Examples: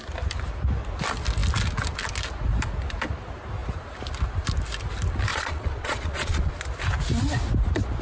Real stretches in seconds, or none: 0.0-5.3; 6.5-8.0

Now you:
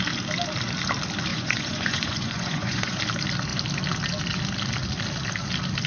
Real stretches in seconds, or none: 0.0-1.3; 3.0-5.9

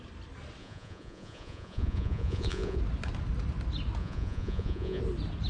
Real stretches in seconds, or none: 0.0-0.6; 2.8-4.0; 5.0-5.5

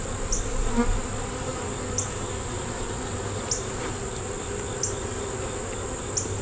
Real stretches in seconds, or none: 0.0-6.4

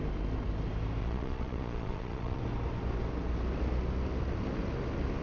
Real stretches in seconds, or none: 0.0-1.0; 2.4-5.2

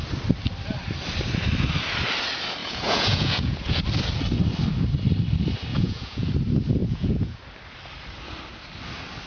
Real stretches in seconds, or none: 0.0-2.6; 3.8-5.7; 6.3-6.8; 7.4-9.3